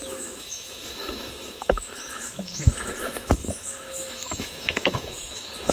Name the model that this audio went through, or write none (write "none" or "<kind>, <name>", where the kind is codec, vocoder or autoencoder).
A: autoencoder, DAC-VAE